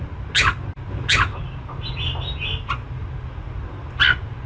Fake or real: real